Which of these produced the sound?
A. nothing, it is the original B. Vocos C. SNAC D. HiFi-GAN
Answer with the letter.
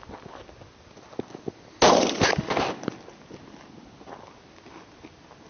A